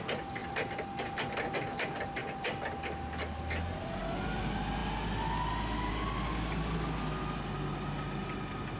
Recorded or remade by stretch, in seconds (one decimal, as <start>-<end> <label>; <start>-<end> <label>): 0.0-8.8 recorded